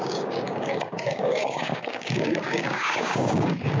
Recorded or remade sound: remade